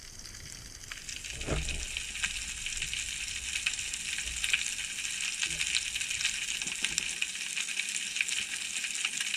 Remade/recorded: recorded